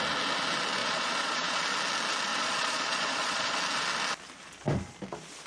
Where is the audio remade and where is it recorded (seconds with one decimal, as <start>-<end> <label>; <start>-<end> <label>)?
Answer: 0.0-0.8 recorded; 0.8-1.6 remade; 1.6-2.3 recorded; 2.3-3.6 remade; 3.6-5.5 recorded